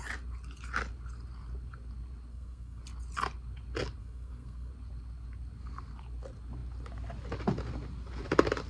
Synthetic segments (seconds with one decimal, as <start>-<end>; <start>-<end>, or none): 2.3-2.8; 4.0-4.7